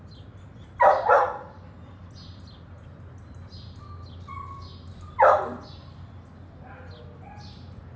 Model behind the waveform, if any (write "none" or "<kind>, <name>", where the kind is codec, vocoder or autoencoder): none